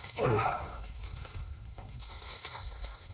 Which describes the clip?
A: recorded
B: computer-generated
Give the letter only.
B